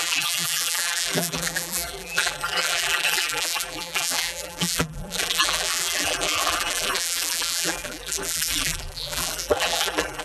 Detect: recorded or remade remade